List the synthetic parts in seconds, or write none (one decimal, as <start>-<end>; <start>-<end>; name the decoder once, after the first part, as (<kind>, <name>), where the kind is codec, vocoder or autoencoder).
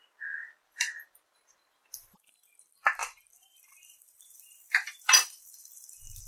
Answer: 0.4-1.3 (vocoder, BigVGAN v2); 3.0-6.3